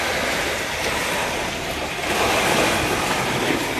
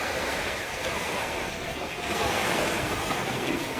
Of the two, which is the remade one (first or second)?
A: second